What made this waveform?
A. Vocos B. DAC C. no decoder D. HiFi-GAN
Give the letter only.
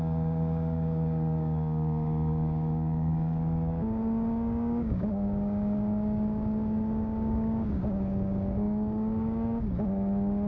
B